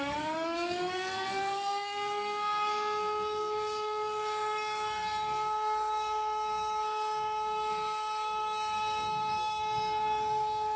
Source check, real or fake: fake